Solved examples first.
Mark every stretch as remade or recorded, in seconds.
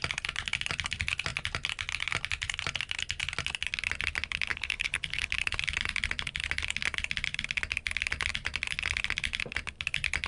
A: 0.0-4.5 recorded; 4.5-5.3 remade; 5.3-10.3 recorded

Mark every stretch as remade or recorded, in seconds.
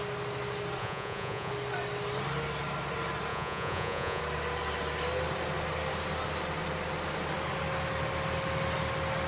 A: 0.0-0.8 recorded; 0.8-1.5 remade; 1.5-3.3 recorded; 3.3-4.2 remade; 4.2-9.3 recorded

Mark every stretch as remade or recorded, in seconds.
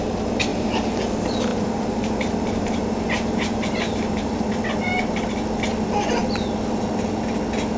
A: 0.0-0.5 recorded; 0.5-1.0 remade; 1.0-1.5 recorded; 1.5-4.5 remade; 4.5-7.8 recorded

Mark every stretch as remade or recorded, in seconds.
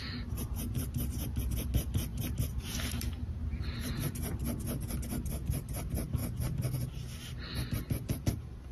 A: 0.0-4.4 remade; 4.4-5.3 recorded; 5.3-6.2 remade; 6.2-8.7 recorded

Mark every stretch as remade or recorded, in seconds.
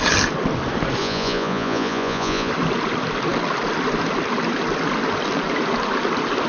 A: 0.0-1.0 recorded; 1.0-2.5 remade; 2.5-6.5 recorded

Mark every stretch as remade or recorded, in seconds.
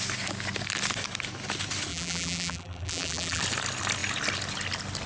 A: 0.0-1.9 recorded; 1.9-3.4 remade; 3.4-5.1 recorded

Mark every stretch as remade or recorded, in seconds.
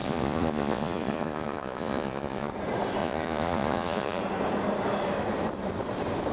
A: 0.0-2.5 remade; 2.5-3.0 recorded; 3.0-4.2 remade; 4.2-6.3 recorded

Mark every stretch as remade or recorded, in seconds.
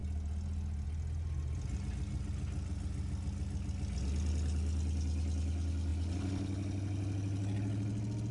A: 0.0-8.3 recorded